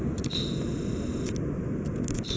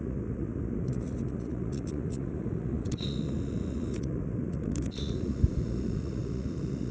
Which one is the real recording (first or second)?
first